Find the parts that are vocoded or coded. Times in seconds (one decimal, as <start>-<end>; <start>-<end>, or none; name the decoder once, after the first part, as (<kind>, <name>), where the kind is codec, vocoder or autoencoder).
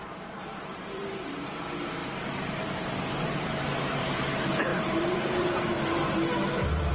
0.0-2.0 (vocoder, BigVGAN v2); 3.8-6.9